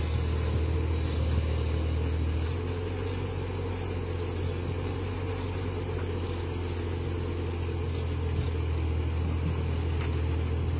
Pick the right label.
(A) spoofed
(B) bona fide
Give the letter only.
B